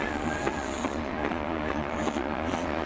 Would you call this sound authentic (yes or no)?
no